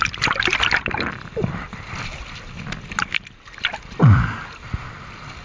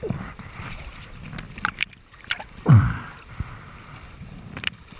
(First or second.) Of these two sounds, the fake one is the second